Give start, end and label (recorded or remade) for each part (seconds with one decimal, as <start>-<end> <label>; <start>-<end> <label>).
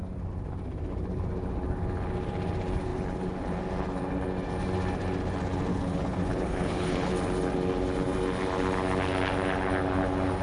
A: 0.0-5.7 recorded; 5.7-7.1 remade; 7.1-10.4 recorded